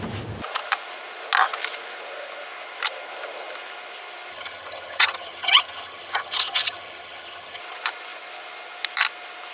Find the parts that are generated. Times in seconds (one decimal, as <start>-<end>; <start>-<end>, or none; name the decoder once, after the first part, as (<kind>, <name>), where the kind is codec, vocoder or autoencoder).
4.3-7.6 (vocoder, HiFi-GAN)

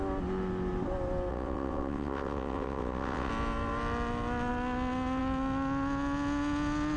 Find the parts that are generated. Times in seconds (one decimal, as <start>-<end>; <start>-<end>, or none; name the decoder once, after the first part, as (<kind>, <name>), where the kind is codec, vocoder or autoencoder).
1.3-3.3 (vocoder, WaveNeXt)

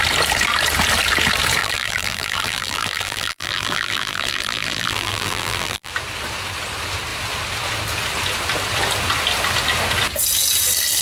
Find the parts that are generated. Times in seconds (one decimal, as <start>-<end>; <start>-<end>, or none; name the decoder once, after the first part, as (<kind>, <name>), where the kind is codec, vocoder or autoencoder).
1.6-5.9 (vocoder, BigVGAN v2)

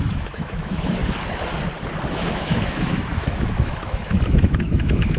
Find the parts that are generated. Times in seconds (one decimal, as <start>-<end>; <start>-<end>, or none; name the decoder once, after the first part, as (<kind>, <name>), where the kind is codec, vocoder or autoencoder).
0.0-1.0 (autoencoder, DAC-VAE); 2.1-5.2

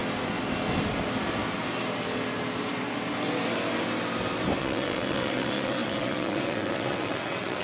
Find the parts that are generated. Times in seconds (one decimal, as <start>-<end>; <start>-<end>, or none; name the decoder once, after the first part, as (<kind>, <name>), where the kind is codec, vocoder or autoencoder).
4.6-7.6 (vocoder, WaveNeXt)

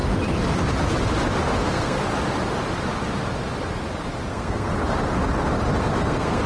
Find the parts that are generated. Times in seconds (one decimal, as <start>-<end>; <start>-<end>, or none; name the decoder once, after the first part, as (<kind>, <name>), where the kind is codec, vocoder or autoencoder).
1.6-2.0 (codec, SNAC); 4.3-4.7; 5.8-6.5

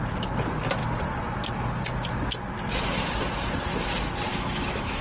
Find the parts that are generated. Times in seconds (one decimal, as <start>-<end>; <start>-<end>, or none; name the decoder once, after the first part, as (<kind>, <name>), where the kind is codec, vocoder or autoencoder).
4.3-5.0 (autoencoder, DAC-VAE)